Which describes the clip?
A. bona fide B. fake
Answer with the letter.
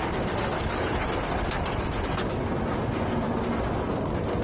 A